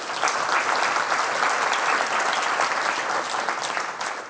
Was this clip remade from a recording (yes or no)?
no